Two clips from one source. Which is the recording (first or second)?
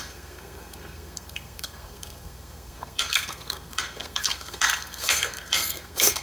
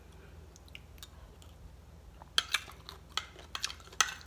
second